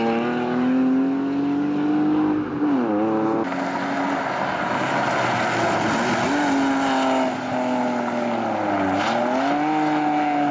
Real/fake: real